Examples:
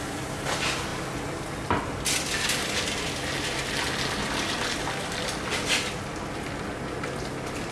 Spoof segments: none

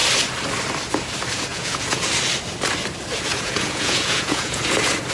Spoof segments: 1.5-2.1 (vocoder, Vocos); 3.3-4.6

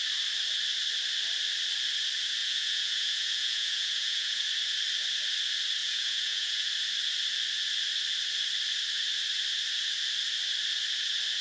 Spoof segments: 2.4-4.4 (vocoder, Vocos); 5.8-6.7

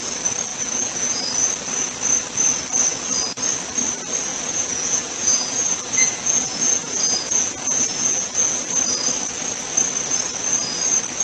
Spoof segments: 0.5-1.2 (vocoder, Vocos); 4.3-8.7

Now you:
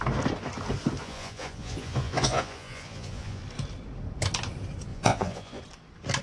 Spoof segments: 1.0-3.4 (vocoder, Vocos); 4.9-5.6

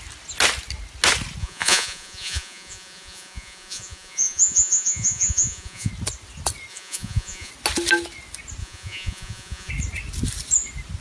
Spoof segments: 1.4-5.9 (vocoder, Vocos); 6.7-7.5; 8.6-9.7

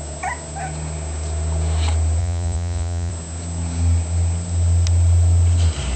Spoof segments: 2.2-3.1 (vocoder, Vocos)

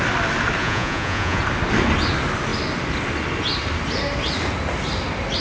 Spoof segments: 0.6-1.4 (vocoder, Vocos)